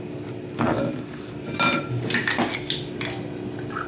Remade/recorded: recorded